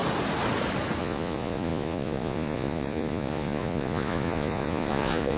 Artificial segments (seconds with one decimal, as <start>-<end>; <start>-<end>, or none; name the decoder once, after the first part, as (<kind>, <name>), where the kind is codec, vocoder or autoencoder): 1.0-5.4 (vocoder, Vocos)